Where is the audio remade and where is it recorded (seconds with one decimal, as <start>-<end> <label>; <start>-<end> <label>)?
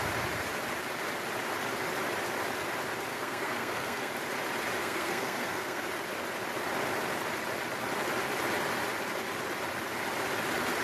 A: 0.0-3.1 recorded; 3.1-4.1 remade; 4.1-4.8 recorded; 4.8-5.8 remade; 5.8-10.8 recorded